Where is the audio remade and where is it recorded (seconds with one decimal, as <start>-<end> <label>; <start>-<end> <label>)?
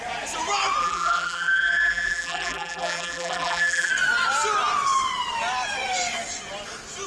0.0-0.8 recorded; 0.8-3.9 remade; 3.9-7.1 recorded